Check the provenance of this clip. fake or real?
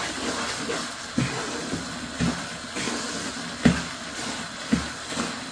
real